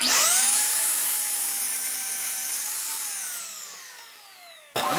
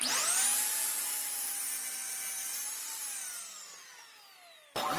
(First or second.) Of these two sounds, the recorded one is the second